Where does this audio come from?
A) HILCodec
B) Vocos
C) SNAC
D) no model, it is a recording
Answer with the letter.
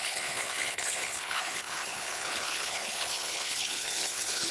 A